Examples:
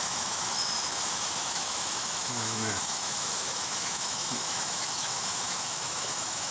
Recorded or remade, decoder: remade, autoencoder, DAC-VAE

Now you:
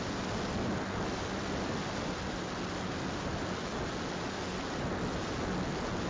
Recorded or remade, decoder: recorded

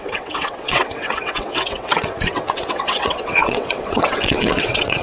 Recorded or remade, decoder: remade, vocoder, WaveNeXt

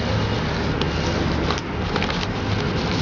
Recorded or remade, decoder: recorded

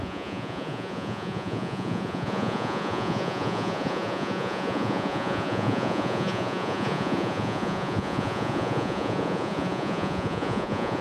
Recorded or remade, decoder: remade, vocoder, Vocos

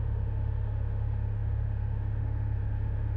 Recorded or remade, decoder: remade, autoencoder, DAC-VAE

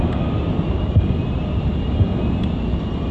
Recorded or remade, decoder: recorded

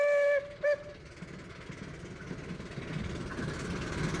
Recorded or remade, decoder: recorded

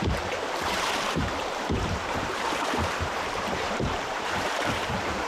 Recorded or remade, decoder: remade, vocoder, BigVGAN v2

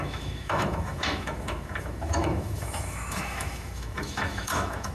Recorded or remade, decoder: remade, autoencoder, DAC-VAE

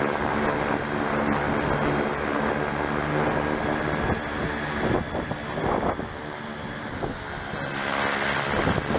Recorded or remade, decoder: recorded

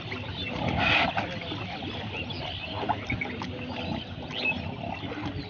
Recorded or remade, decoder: recorded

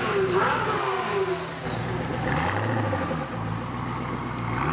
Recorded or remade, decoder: recorded